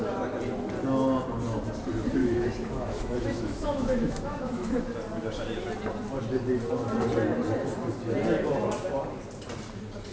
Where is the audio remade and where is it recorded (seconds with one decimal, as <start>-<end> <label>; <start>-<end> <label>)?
0.0-2.2 recorded; 2.2-4.8 remade; 4.8-10.1 recorded